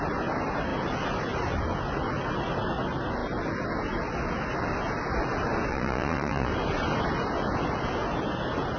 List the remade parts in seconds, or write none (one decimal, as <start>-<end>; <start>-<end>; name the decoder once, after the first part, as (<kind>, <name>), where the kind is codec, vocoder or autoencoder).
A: 5.7-6.5 (vocoder, Vocos)